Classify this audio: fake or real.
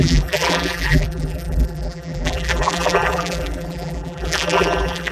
fake